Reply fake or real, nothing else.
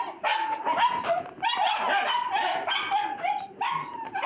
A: real